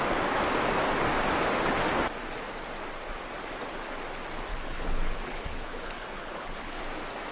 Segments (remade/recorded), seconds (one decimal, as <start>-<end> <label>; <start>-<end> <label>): 0.0-4.5 recorded; 4.5-6.8 remade; 6.8-7.3 recorded